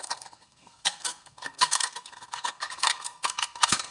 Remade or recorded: remade